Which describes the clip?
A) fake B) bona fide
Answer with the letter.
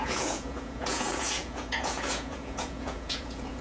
A